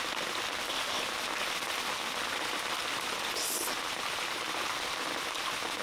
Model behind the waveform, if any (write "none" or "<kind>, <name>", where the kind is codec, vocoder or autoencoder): none